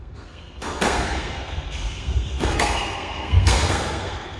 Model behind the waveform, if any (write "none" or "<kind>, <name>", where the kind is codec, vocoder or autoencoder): codec, SNAC